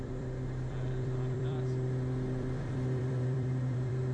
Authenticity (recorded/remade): remade